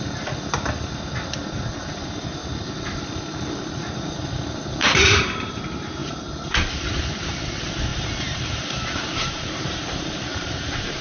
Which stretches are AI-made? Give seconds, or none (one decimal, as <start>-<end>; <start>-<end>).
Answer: 4.8-5.6; 6.0-6.9; 7.9-11.0